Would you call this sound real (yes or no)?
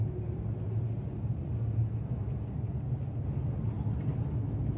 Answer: yes